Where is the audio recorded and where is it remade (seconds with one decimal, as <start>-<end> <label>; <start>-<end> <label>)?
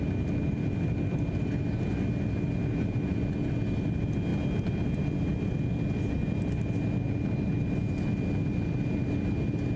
0.0-9.8 recorded